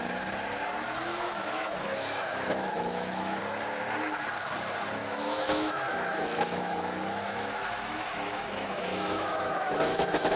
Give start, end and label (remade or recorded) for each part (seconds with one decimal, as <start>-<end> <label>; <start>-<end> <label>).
0.0-1.1 recorded; 1.1-3.4 remade; 3.4-5.0 recorded; 5.0-10.4 remade